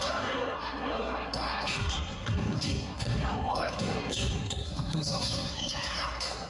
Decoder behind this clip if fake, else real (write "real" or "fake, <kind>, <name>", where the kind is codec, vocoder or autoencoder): fake, codec, SNAC